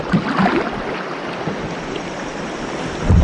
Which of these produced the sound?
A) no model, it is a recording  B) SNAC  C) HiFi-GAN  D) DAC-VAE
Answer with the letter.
A